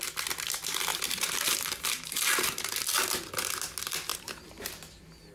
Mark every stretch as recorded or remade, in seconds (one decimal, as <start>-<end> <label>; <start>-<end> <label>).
0.0-0.9 recorded; 0.9-2.7 remade; 2.7-4.1 recorded; 4.1-4.7 remade; 4.7-5.3 recorded